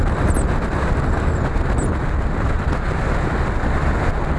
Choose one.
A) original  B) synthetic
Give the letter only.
A